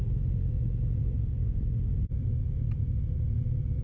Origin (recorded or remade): recorded